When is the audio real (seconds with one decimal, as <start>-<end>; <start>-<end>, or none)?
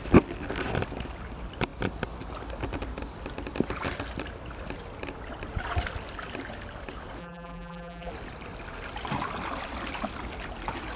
0.0-7.2; 8.1-11.0